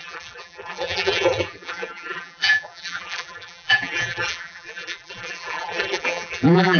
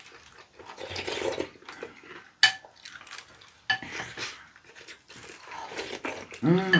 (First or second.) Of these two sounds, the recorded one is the second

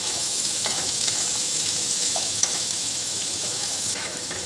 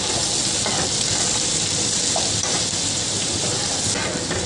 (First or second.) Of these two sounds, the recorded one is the second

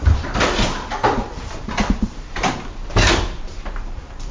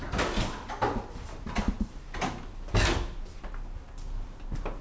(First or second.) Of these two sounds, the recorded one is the second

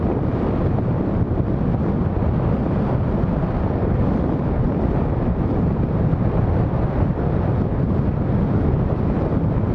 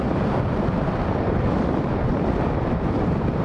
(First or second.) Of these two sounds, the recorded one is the first